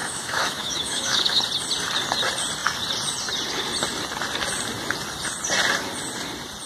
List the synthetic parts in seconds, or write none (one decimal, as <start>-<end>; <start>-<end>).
0.0-1.4